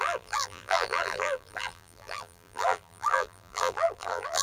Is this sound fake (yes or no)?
yes